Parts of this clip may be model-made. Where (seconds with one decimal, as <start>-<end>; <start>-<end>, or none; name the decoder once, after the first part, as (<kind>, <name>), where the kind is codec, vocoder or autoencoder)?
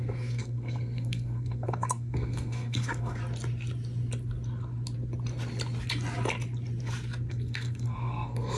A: 0.0-3.2 (codec, SNAC); 7.3-8.6